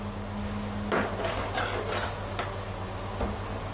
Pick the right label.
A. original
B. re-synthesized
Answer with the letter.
A